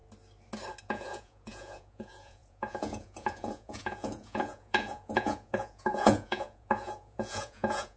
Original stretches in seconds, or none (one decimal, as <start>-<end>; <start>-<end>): 0.0-0.8